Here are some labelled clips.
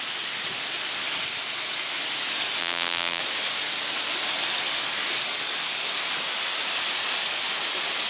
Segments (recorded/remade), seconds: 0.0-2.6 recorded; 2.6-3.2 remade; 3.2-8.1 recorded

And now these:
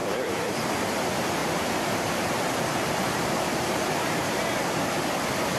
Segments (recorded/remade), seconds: 0.0-0.7 remade; 0.7-1.4 recorded; 1.4-4.4 remade; 4.4-5.6 recorded